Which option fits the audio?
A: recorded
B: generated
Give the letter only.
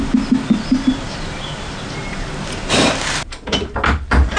A